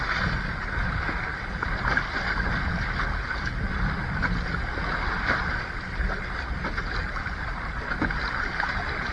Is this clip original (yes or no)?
yes